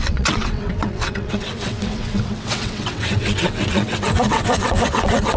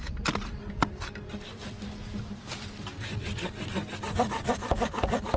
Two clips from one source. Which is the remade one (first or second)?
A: first